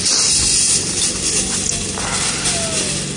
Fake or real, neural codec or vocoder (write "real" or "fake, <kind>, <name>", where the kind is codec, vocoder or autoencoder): real